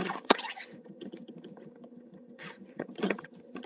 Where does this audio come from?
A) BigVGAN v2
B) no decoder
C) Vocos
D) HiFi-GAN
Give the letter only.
D